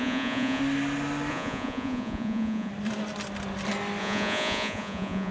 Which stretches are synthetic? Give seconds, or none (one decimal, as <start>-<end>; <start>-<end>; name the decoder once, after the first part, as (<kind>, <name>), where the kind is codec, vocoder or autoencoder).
0.0-0.6 (vocoder, Vocos); 1.3-2.7; 4.0-5.3